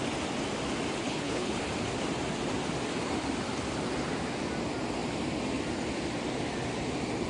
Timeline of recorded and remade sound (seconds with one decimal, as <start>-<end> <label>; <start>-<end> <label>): 0.0-1.0 recorded; 1.0-1.5 remade; 1.5-7.3 recorded